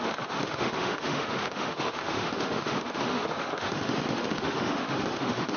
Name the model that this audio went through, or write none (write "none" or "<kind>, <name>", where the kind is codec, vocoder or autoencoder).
autoencoder, DAC-VAE